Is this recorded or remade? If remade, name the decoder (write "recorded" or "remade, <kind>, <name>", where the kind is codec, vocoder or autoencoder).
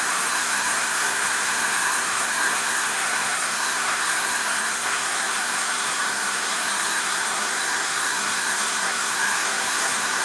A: remade, codec, SNAC